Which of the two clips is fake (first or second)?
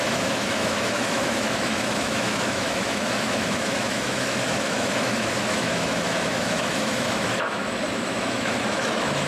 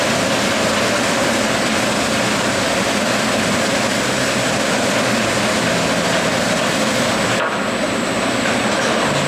first